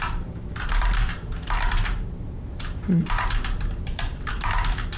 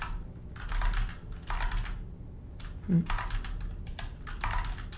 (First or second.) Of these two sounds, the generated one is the first